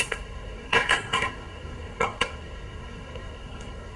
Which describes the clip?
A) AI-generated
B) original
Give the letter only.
A